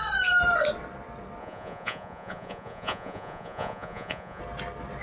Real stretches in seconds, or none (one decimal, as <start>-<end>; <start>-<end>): 0.0-1.4; 4.4-5.0

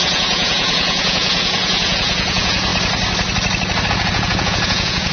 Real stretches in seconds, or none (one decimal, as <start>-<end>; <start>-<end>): 2.7-3.9

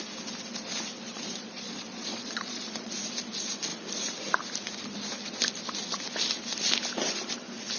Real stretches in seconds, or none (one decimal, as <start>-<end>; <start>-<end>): 0.0-0.9; 2.9-7.8

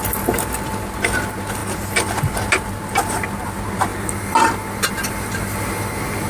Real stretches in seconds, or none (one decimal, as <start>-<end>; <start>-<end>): 0.0-6.3